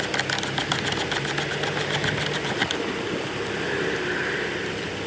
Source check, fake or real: real